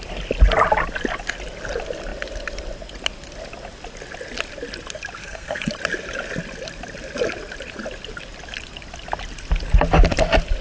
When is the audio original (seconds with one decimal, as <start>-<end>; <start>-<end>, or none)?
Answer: 0.0-5.2; 5.7-10.6